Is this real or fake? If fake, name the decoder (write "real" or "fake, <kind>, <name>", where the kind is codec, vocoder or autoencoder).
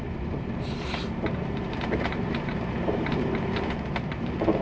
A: fake, vocoder, BigVGAN v2